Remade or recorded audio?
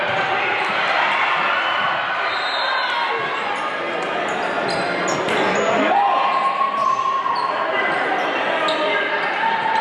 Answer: recorded